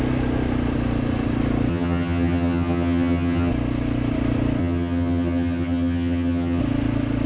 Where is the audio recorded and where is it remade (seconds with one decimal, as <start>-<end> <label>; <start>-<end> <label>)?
0.0-1.7 recorded; 1.7-3.5 remade; 3.5-4.6 recorded; 4.6-6.6 remade; 6.6-7.3 recorded